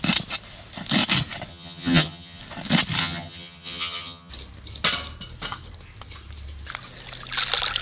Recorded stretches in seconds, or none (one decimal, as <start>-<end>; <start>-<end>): 0.0-1.5; 2.4-3.0; 4.3-7.8